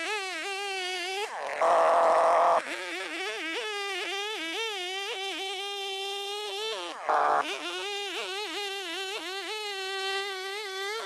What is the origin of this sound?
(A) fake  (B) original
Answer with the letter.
A